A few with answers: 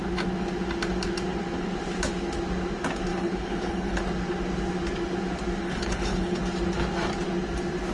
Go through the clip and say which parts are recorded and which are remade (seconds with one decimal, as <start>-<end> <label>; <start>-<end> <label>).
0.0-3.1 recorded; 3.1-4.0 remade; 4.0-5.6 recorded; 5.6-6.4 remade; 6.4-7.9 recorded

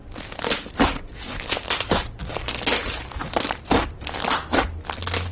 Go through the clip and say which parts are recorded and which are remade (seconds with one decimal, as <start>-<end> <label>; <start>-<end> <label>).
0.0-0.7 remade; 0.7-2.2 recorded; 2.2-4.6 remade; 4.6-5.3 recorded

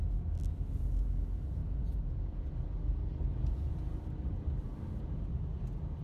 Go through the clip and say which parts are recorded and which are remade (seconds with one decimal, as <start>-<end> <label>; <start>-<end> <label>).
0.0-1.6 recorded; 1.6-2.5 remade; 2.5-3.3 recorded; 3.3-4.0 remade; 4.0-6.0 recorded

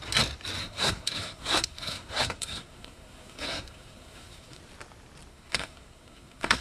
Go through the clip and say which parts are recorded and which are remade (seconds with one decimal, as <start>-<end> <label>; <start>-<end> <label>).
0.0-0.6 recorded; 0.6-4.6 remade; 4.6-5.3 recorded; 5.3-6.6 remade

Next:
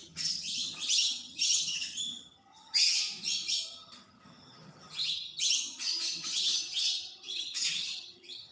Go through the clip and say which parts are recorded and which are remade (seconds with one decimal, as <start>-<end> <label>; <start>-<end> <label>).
0.0-3.0 remade; 3.0-3.5 recorded; 3.5-8.5 remade

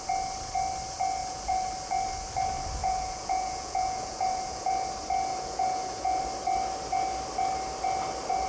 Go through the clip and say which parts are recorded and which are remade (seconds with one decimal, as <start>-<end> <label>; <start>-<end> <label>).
0.0-1.2 recorded; 1.2-1.9 remade; 1.9-2.8 recorded; 2.8-4.7 remade; 4.7-5.3 recorded; 5.3-6.2 remade; 6.2-8.5 recorded

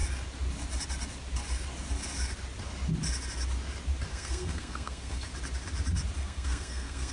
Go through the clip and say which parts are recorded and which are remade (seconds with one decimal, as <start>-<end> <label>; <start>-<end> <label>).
0.0-4.1 recorded; 4.1-5.3 remade; 5.3-6.2 recorded; 6.2-7.1 remade